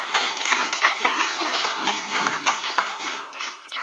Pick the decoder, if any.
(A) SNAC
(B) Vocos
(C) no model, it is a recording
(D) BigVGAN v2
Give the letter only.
A